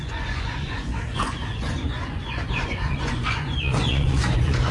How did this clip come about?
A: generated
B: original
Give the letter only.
A